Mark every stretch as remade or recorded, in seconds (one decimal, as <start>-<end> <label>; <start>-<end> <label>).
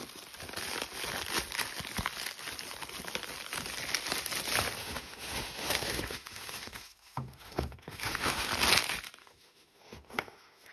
0.0-4.8 recorded; 4.8-8.5 remade; 8.5-9.2 recorded; 9.2-10.7 remade